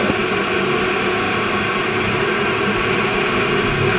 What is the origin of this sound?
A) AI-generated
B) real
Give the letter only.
B